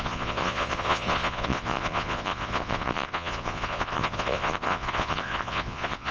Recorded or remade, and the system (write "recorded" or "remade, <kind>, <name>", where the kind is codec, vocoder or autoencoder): remade, vocoder, Vocos